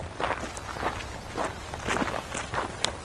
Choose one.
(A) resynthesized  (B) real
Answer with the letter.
B